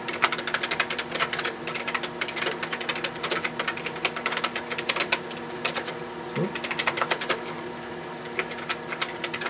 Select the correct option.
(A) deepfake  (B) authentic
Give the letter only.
B